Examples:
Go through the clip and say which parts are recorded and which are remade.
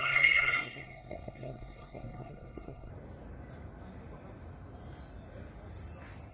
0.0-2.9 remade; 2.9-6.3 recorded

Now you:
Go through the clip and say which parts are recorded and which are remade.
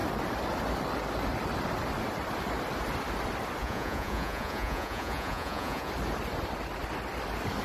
0.0-3.6 recorded; 3.6-5.9 remade; 5.9-7.6 recorded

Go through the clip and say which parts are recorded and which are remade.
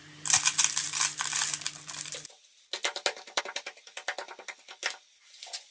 0.0-5.7 recorded